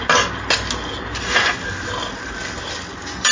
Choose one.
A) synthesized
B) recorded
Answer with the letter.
B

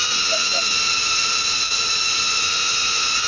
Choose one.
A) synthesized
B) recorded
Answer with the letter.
A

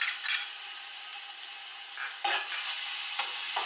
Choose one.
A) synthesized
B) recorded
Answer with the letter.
B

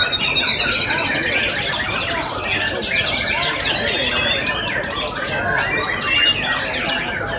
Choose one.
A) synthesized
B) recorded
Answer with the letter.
B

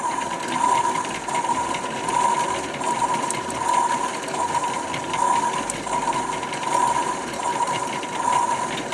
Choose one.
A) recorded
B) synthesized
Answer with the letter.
B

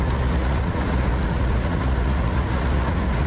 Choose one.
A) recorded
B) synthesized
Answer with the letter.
B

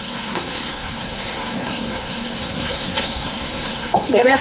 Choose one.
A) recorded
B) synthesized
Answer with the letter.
B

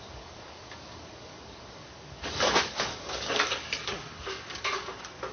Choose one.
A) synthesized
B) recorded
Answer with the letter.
A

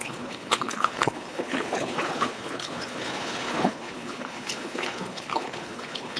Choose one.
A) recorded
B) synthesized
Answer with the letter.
B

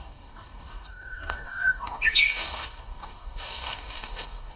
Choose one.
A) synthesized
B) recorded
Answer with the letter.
A